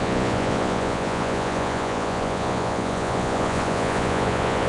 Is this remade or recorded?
remade